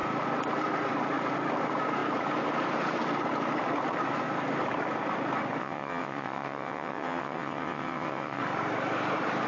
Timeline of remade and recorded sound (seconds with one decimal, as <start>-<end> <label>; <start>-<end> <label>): 0.0-5.6 recorded; 5.6-8.4 remade; 8.4-9.5 recorded